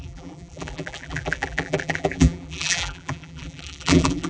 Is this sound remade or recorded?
remade